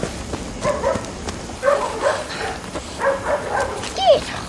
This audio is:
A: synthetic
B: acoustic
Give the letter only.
A